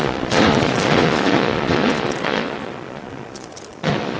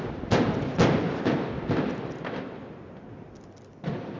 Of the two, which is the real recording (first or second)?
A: second